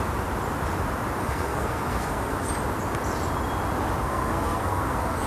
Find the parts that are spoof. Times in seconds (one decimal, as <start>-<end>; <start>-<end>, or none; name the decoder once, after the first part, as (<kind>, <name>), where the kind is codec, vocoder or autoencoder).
1.2-2.5 (codec, SNAC); 4.0-5.3